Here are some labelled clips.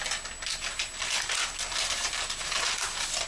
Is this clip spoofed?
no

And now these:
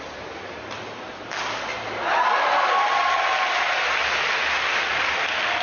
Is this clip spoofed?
no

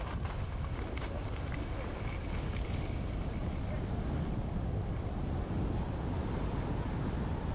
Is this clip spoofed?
no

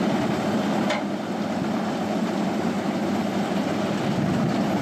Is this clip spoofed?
no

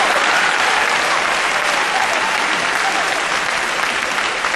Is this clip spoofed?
no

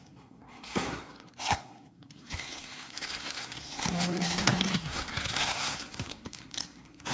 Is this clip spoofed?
yes